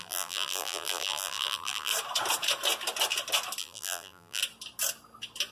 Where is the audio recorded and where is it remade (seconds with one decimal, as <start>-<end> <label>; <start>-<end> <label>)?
0.0-1.9 remade; 1.9-3.6 recorded; 3.6-4.4 remade; 4.4-5.5 recorded